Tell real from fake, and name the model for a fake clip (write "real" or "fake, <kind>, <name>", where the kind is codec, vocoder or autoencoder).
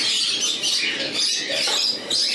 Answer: real